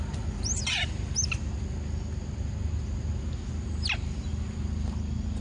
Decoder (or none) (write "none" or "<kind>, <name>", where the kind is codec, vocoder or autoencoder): none